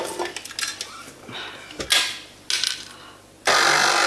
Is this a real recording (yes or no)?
yes